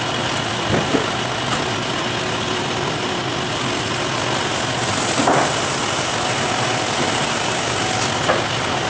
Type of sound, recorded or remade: recorded